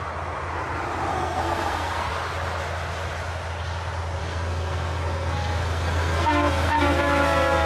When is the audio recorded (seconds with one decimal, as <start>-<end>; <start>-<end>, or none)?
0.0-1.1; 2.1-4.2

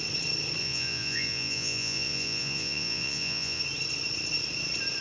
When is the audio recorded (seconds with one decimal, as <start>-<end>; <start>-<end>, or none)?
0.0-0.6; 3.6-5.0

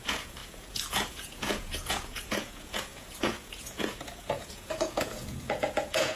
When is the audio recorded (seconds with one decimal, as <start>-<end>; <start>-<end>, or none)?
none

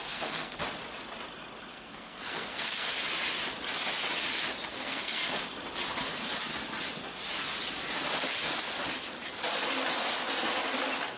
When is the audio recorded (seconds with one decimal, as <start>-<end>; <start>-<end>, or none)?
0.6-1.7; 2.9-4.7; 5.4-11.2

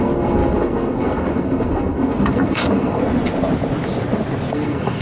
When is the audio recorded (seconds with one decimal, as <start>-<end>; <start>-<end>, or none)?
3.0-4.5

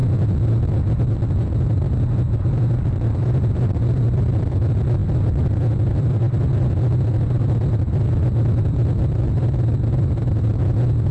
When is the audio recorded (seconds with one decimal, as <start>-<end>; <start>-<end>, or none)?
0.0-1.1